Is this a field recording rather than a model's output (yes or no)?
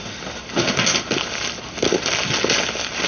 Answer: yes